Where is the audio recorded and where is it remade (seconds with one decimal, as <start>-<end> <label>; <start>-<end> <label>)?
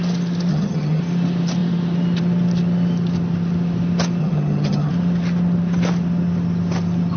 0.0-0.5 recorded; 0.5-1.0 remade; 1.0-4.2 recorded; 4.2-4.9 remade; 4.9-7.2 recorded